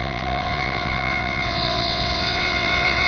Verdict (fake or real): fake